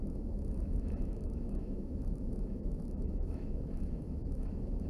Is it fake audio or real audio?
fake